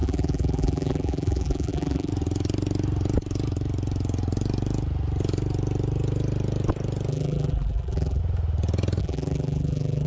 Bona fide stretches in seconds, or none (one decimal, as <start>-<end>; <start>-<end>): 2.1-7.1; 8.2-9.0